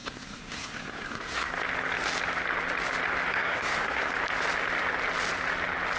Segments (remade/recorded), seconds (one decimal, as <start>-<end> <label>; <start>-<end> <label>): 0.0-1.5 remade; 1.5-3.3 recorded; 3.3-4.1 remade; 4.1-6.0 recorded